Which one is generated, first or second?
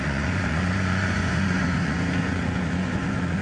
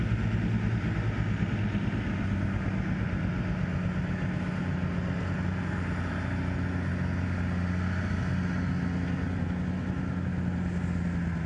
first